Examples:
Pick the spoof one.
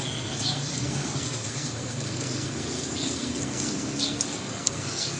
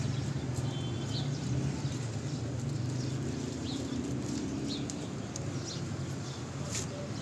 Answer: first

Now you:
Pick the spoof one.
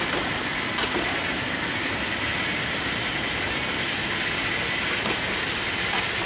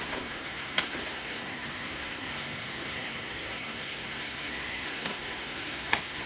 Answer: second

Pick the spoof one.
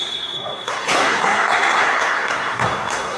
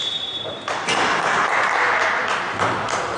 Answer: first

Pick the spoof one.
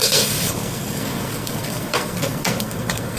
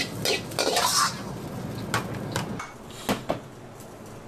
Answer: first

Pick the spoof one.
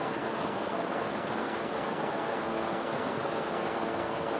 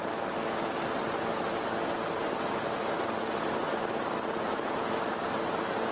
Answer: first